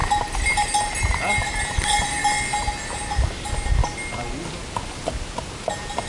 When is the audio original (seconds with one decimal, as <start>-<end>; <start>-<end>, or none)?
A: 0.0-6.1